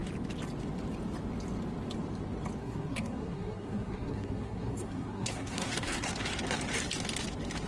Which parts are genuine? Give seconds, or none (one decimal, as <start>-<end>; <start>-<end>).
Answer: 0.0-2.6; 6.1-7.7